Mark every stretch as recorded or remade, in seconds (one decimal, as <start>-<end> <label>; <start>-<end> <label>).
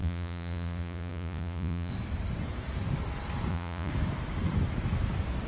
0.0-1.9 remade; 1.9-3.5 recorded; 3.5-3.9 remade; 3.9-5.5 recorded